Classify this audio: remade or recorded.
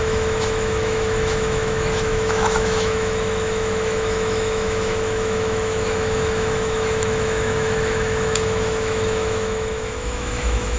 remade